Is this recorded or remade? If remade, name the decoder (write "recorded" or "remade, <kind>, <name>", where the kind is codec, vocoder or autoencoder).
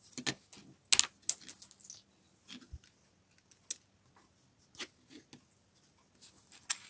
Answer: recorded